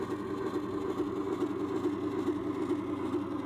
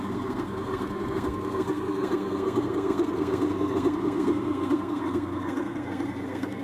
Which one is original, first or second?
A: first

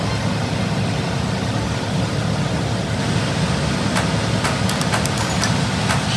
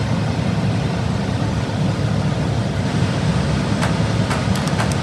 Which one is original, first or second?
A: first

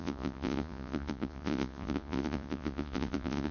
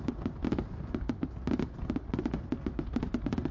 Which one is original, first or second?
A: second